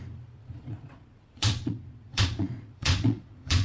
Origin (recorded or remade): remade